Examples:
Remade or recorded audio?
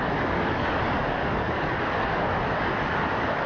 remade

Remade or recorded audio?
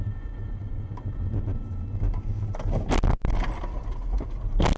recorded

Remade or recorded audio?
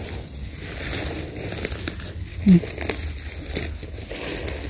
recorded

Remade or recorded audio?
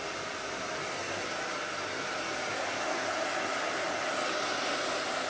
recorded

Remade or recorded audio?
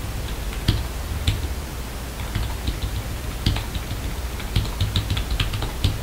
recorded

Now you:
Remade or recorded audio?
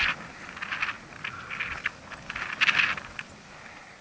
recorded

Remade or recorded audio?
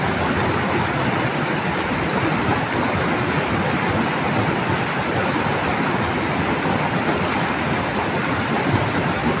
recorded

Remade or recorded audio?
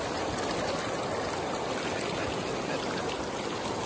recorded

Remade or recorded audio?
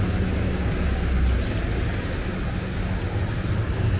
recorded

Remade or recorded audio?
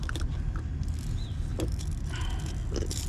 recorded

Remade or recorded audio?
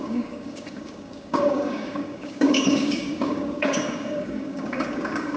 remade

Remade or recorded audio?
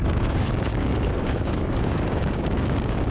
remade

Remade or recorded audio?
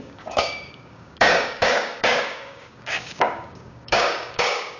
remade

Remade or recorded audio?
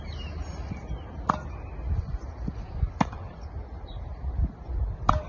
recorded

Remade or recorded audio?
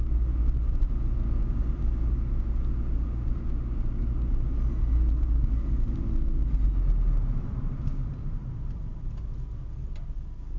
recorded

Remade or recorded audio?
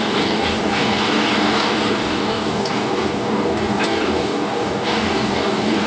remade